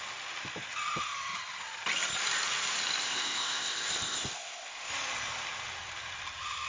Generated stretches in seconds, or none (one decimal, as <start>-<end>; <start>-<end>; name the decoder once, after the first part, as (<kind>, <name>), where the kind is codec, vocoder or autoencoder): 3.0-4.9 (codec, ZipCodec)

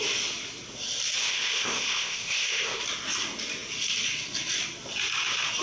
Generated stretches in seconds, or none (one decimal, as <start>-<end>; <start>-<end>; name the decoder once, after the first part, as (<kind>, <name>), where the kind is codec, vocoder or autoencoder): 1.2-2.8 (codec, ZipCodec)

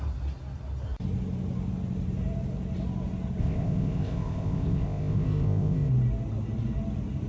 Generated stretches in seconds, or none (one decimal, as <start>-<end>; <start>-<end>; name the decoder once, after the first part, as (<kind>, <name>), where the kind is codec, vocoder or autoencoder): 3.4-5.9 (codec, ZipCodec)

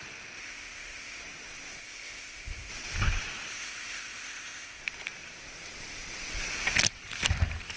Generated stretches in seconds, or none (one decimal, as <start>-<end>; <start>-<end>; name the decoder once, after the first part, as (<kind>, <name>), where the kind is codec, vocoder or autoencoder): 0.4-1.2 (codec, ZipCodec); 1.8-2.7; 3.5-4.8